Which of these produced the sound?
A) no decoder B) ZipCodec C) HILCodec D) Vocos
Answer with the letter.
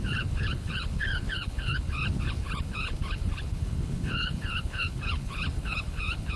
C